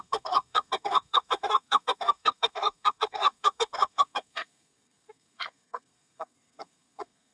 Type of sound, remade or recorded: remade